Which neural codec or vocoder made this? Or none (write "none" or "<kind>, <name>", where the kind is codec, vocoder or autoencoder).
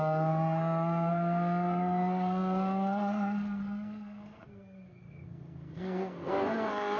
codec, SNAC